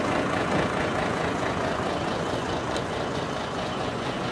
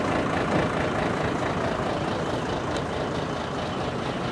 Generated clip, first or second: first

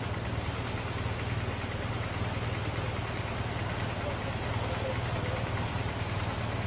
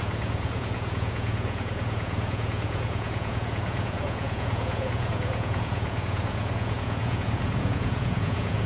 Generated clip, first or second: second